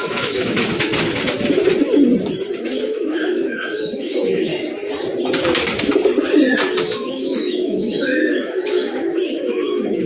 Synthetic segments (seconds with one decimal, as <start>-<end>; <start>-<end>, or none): 0.0-0.9; 2.6-4.5; 6.8-10.1